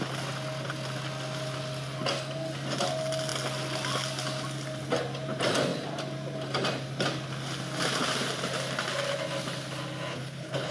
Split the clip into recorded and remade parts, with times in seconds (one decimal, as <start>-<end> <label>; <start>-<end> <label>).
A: 0.0-10.1 recorded; 10.1-10.7 remade